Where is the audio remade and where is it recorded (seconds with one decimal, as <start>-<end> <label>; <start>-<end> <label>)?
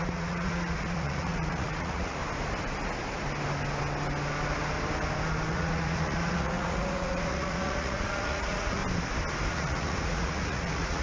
0.0-2.2 remade; 2.2-5.5 recorded; 5.5-8.8 remade; 8.8-9.5 recorded; 9.5-11.0 remade